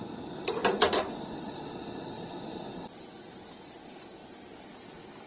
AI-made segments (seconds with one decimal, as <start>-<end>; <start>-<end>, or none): 4.2-4.8